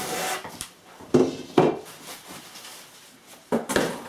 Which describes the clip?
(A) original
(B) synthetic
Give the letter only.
A